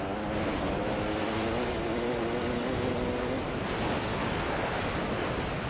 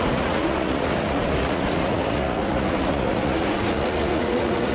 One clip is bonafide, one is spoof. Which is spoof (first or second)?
second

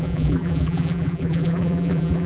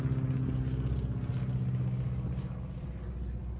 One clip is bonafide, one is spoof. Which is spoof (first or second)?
first